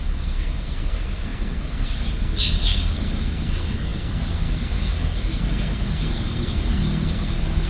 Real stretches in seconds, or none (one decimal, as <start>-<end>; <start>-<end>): none